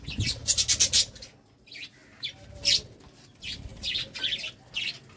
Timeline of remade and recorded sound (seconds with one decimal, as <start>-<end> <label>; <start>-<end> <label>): 0.0-5.2 recorded